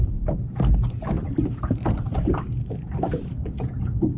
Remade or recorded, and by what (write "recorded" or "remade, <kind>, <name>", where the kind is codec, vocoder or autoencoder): recorded